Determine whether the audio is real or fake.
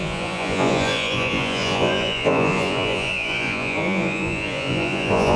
fake